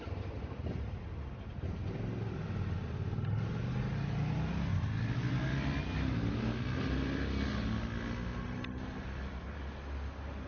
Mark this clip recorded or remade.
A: recorded